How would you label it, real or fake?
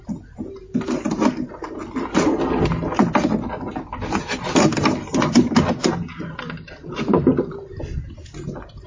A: real